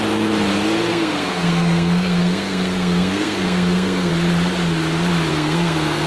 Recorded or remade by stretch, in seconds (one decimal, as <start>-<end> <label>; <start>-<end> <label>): 0.0-0.9 recorded; 0.9-4.1 remade; 4.1-5.3 recorded; 5.3-6.1 remade